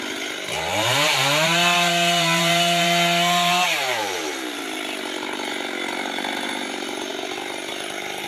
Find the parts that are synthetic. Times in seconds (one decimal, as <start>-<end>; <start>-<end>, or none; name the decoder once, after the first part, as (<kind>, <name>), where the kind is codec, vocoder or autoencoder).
0.0-8.3 (vocoder, BigVGAN v2)

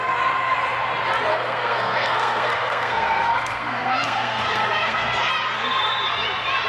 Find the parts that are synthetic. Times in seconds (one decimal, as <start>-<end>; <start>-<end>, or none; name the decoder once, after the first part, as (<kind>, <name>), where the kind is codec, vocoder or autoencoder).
1.3-5.3 (codec, SNAC)

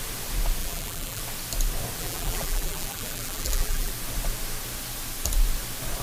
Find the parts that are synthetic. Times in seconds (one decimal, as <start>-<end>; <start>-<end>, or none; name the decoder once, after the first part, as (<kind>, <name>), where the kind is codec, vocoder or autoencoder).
0.6-1.2 (vocoder, BigVGAN v2); 2.0-3.9

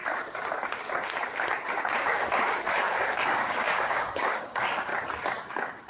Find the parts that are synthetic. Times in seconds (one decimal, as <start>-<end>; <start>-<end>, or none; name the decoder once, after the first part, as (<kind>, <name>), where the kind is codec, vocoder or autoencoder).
2.8-4.9 (codec, DAC); 5.5-5.9